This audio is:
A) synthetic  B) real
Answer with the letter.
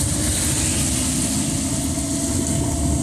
B